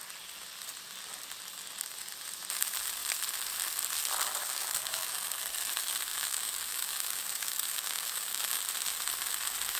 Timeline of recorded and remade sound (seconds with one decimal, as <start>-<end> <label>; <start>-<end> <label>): 0.0-4.4 recorded; 4.4-5.4 remade; 5.4-6.1 recorded; 6.1-8.6 remade; 8.6-9.8 recorded